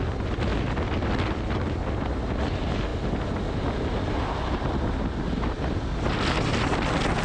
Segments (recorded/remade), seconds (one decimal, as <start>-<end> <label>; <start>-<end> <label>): 0.0-7.2 recorded